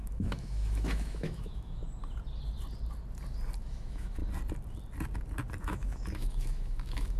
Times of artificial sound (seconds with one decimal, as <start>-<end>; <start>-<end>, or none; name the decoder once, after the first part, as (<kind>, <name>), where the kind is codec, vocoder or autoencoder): 0.0-1.8 (autoencoder, DAC-VAE); 3.6-4.2; 5.6-7.2